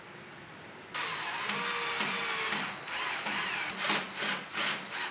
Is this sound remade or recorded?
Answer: recorded